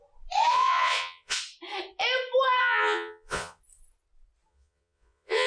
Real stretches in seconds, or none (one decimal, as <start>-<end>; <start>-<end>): 0.0-0.5; 1.4-2.6; 3.6-4.5